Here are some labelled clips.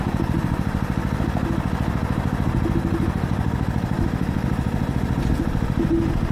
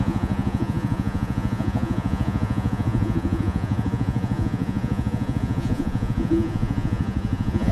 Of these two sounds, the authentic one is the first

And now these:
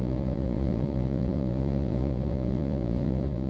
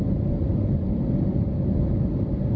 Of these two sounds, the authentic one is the second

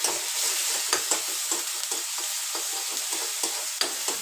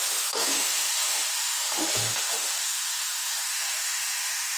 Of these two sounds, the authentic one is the first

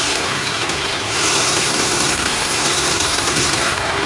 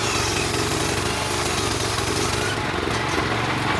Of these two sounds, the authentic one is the second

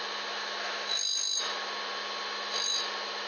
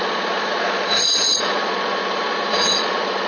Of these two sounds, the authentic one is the first